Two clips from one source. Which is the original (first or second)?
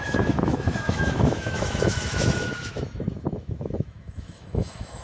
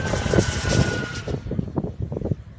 second